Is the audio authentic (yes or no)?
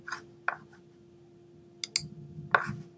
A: yes